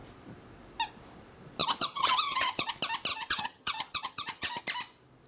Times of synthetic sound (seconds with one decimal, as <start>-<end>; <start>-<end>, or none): 1.6-2.7; 3.1-4.6